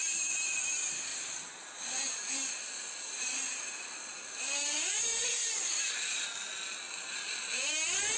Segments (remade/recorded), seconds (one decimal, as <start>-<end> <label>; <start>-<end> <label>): 0.0-8.2 recorded